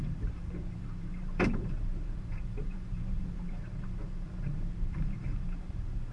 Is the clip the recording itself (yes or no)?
no